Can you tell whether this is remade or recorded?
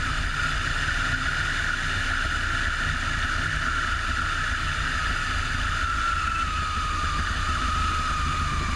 recorded